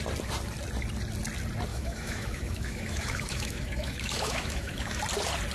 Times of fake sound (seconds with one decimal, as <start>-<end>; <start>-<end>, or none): 1.7-5.0